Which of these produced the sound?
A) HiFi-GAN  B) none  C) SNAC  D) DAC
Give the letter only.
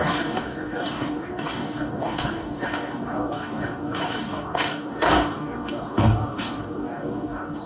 D